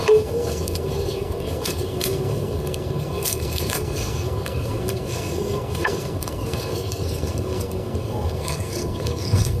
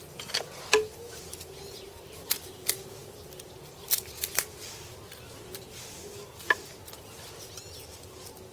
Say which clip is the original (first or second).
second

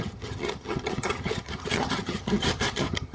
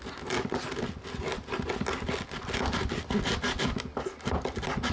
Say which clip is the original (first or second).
second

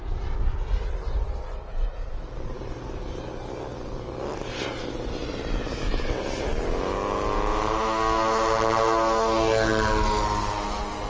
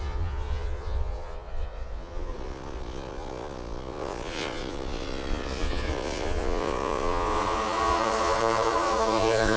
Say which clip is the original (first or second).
first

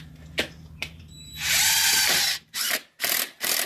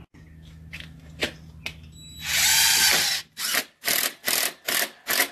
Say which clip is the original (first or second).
second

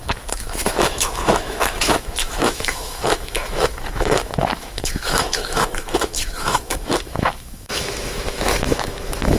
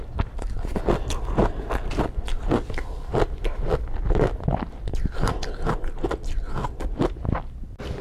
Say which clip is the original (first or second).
second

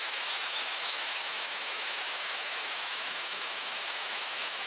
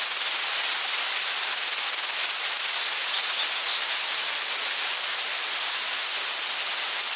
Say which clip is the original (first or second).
second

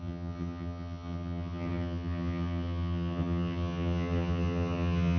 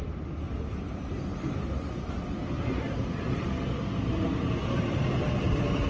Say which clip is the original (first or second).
second